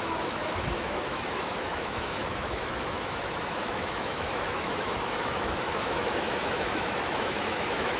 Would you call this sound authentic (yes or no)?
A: no